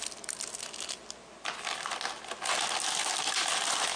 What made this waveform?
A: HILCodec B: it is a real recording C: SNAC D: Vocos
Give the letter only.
B